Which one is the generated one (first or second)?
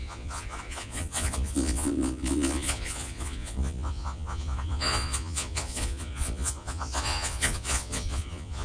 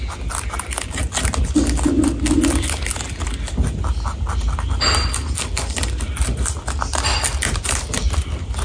first